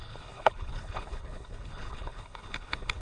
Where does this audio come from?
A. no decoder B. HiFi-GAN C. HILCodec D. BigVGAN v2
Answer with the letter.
C